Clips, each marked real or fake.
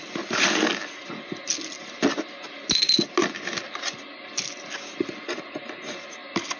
real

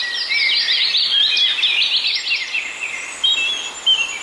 real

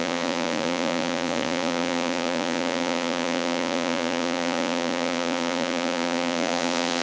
fake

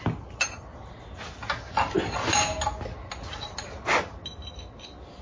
real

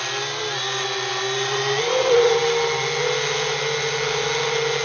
real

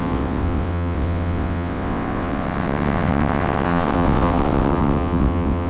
fake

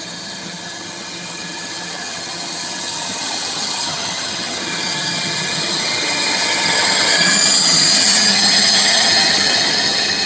fake